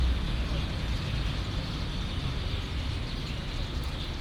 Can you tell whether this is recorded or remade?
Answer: recorded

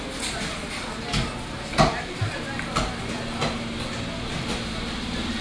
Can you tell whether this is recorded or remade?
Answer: recorded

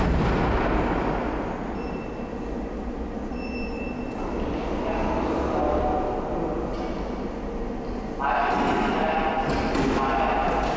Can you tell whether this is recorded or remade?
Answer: recorded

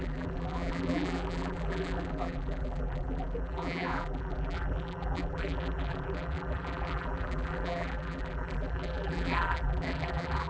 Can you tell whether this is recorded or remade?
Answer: remade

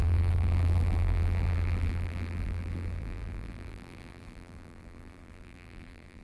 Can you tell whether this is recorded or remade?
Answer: remade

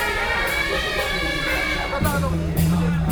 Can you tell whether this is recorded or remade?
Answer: remade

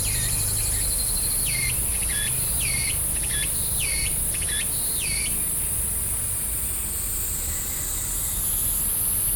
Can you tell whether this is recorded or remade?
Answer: recorded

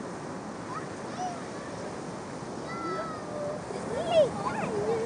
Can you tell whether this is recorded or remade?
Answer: recorded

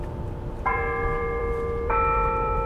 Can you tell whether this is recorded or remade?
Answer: remade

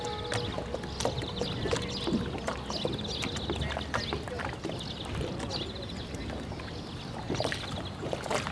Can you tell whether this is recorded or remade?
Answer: recorded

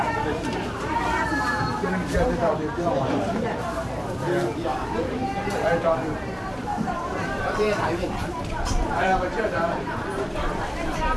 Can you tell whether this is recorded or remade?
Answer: remade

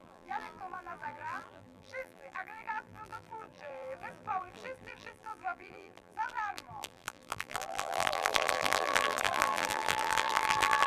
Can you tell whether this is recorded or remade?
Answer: remade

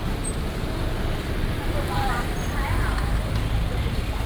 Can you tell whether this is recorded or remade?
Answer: remade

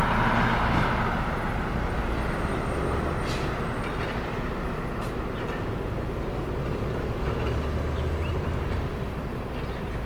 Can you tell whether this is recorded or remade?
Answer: recorded